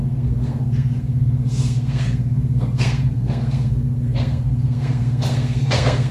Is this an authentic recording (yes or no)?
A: no